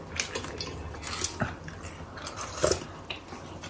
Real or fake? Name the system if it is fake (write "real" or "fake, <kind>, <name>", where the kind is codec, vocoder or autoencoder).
real